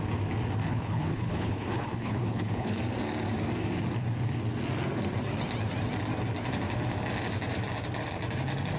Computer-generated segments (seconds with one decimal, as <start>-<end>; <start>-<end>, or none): 0.6-2.8